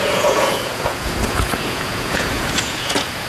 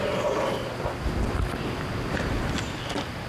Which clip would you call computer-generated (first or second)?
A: first